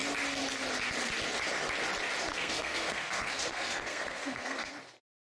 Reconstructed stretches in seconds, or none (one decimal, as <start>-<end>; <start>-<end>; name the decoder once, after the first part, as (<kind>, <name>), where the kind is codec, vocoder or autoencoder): 2.3-4.7 (codec, SNAC)